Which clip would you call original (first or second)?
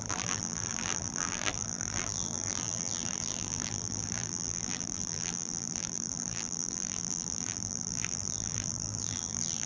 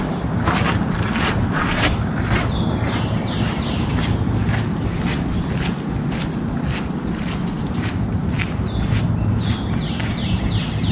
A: second